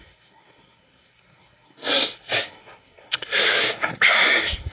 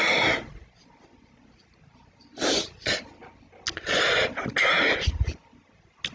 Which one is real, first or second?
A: second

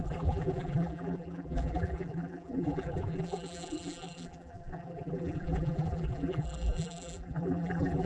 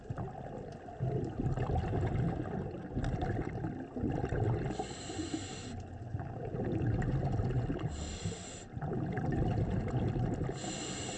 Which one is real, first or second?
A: second